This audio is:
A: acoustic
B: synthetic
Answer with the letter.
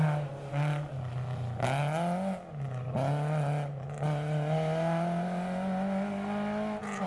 A